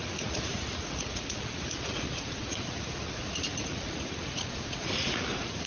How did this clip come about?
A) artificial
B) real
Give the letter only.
A